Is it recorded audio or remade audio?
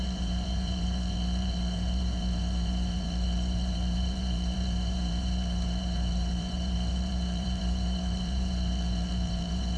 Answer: remade